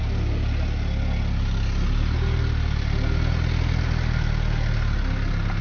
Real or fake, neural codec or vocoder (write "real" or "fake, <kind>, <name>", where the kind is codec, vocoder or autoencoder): real